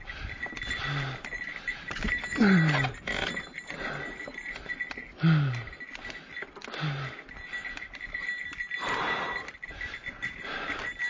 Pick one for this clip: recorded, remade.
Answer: recorded